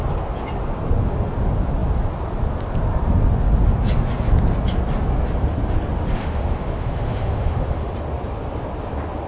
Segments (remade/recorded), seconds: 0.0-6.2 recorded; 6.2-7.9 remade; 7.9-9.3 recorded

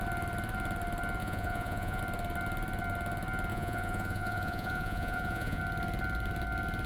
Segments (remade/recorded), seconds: 0.0-1.2 recorded; 1.2-2.0 remade; 2.0-3.5 recorded; 3.5-5.6 remade; 5.6-6.9 recorded